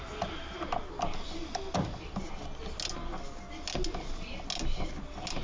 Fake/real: real